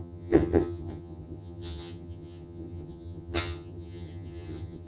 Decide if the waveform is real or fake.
fake